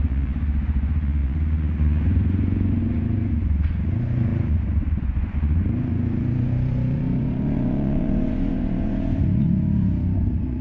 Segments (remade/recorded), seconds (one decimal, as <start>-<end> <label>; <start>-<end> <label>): 0.0-10.6 remade